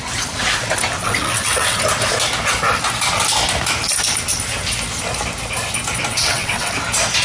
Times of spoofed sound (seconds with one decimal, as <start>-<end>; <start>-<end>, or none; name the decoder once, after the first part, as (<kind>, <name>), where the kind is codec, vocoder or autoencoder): 1.0-1.8 (vocoder, WaveNeXt); 6.1-6.7